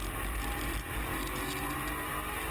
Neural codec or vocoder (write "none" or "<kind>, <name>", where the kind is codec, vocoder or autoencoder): none